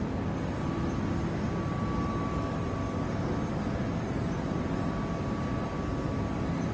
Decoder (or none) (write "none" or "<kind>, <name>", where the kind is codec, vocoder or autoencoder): none